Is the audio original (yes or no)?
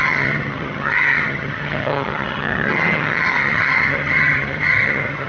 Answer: no